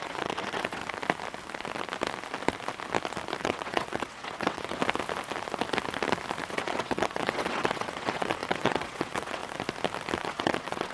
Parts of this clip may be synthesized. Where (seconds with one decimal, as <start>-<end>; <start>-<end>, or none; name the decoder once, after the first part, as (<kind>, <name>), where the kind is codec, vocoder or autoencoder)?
0.0-0.8 (vocoder, WaveNeXt); 3.4-4.8; 6.5-9.4; 10.2-10.9